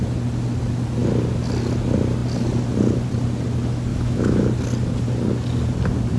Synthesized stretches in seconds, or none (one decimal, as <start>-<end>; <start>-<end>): 3.9-4.4